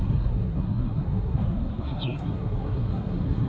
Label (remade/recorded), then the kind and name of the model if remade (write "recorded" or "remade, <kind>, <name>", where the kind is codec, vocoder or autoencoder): remade, codec, SNAC